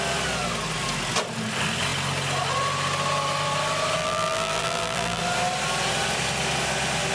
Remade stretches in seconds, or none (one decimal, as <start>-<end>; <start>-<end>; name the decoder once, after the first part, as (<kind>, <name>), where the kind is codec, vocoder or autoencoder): 4.0-5.2 (vocoder, BigVGAN v2)